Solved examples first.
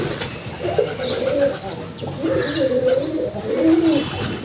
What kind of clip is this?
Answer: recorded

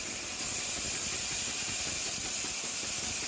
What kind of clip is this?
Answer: recorded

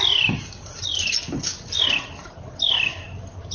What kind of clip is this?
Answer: recorded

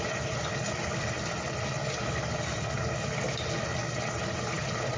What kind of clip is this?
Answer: recorded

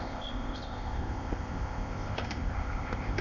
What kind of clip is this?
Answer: remade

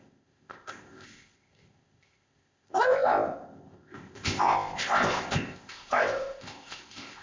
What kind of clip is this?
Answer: remade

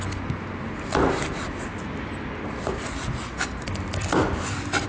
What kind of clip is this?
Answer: recorded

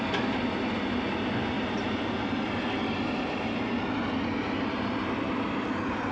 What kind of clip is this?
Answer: recorded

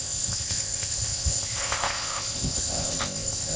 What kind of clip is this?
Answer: remade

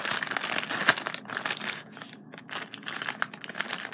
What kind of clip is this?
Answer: recorded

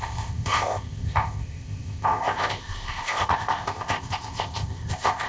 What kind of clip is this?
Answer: remade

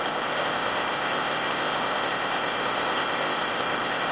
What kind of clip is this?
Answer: remade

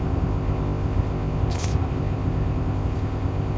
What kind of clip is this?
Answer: remade